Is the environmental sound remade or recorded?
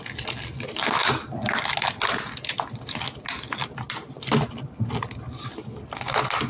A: recorded